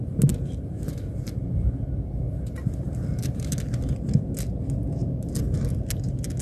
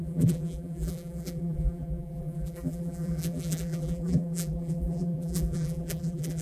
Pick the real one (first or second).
first